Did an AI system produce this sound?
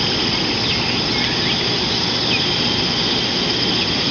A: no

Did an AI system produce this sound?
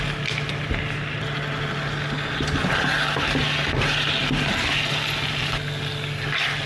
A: no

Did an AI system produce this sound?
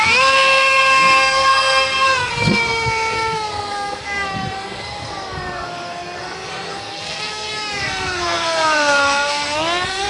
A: yes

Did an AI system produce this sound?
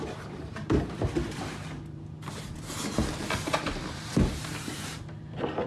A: yes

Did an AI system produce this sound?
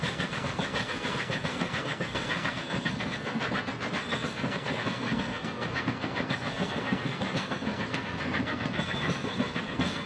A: yes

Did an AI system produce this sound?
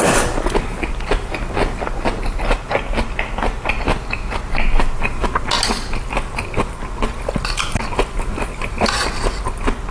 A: no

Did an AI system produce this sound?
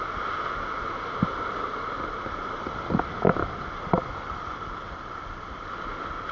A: no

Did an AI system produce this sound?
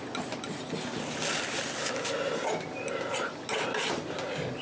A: no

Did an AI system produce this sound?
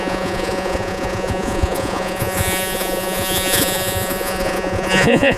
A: yes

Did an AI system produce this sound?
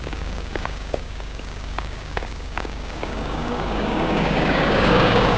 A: yes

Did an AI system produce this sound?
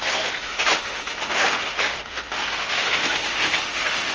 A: yes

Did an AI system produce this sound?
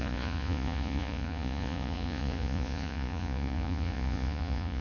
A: yes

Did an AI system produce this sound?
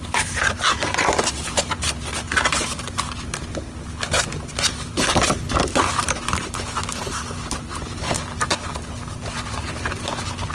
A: no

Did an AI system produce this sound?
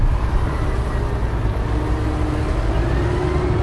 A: no